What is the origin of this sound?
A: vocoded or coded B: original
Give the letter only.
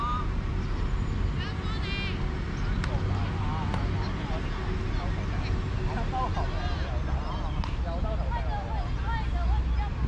B